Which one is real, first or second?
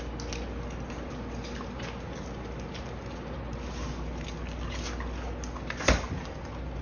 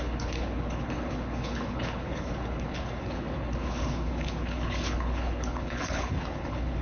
first